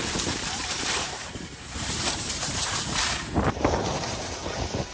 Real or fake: fake